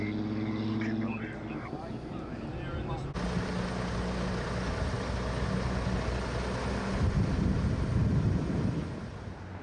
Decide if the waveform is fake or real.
real